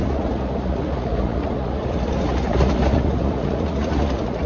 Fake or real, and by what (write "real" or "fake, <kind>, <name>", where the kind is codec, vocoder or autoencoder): fake, vocoder, Vocos